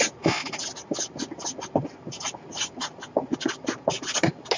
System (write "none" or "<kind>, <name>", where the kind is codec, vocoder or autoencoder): none